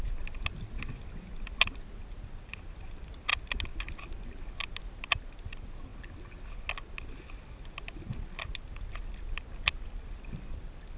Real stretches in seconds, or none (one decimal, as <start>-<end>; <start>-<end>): 0.0-11.0